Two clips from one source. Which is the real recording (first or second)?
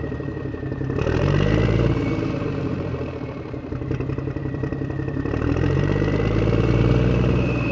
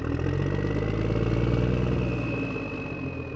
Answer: second